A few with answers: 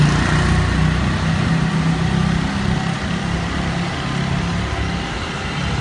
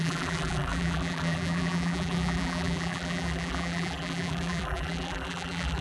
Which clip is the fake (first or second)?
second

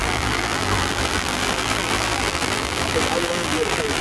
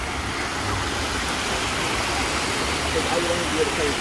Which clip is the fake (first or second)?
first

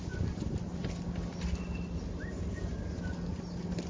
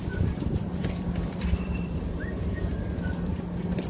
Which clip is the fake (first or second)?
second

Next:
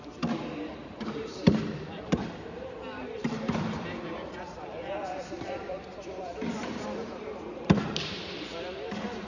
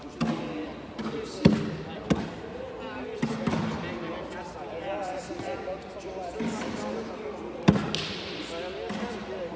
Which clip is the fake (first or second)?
first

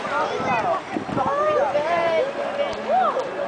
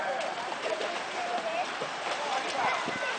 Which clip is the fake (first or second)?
second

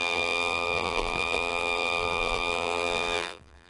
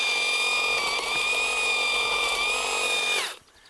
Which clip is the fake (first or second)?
first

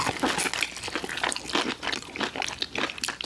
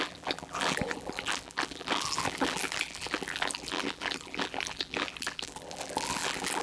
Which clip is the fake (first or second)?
second